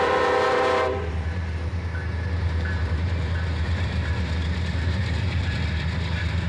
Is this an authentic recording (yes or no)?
no